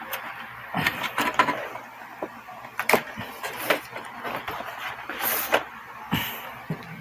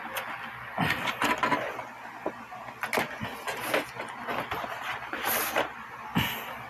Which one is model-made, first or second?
first